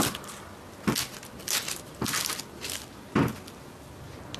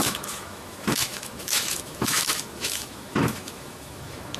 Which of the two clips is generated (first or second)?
second